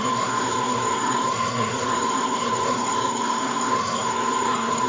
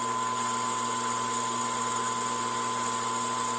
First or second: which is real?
second